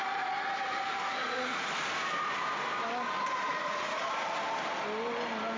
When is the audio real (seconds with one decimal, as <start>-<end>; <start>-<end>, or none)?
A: 0.0-1.2; 1.7-3.5; 4.0-5.6